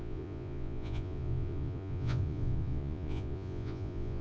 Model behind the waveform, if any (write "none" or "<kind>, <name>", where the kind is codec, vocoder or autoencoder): vocoder, Vocos